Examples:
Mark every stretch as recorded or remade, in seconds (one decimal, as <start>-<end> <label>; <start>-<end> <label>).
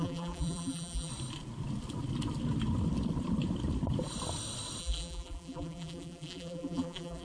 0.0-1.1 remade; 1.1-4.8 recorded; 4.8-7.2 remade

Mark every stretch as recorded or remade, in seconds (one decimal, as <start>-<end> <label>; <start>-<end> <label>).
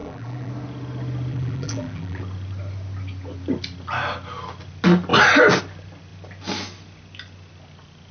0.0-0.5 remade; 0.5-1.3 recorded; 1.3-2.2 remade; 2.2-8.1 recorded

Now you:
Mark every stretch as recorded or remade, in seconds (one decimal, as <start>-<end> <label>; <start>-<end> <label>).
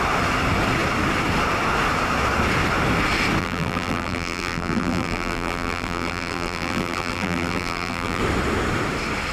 0.0-3.4 recorded; 3.4-8.2 remade; 8.2-9.3 recorded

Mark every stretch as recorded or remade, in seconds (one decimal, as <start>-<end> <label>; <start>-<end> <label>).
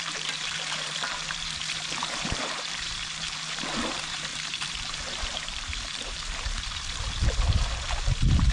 0.0-8.5 remade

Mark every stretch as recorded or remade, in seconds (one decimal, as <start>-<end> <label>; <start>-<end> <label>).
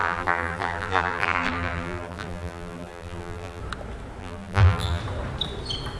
0.0-3.6 remade; 3.6-4.2 recorded; 4.2-5.0 remade; 5.0-6.0 recorded